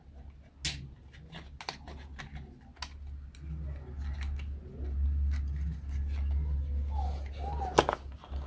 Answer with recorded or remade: recorded